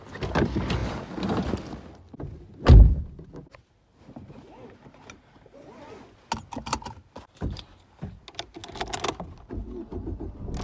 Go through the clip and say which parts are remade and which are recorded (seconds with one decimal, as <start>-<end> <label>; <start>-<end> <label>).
0.0-10.6 recorded